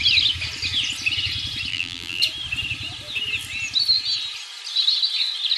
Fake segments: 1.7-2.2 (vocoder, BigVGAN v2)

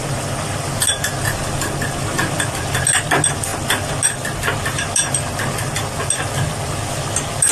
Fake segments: none

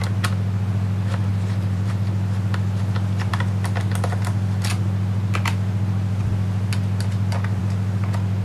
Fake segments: 1.3-1.9 (vocoder, BigVGAN v2)

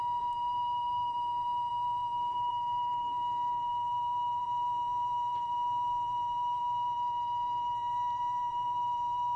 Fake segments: 0.0-9.4 (vocoder, BigVGAN v2)

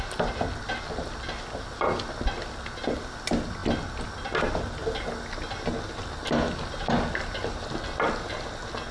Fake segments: none

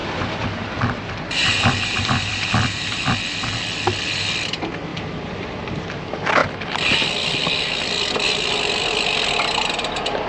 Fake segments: 0.0-3.1 (vocoder, BigVGAN v2); 4.9-6.0